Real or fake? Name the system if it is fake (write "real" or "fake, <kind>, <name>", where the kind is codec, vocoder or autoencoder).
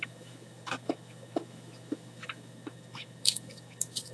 fake, autoencoder, DAC-VAE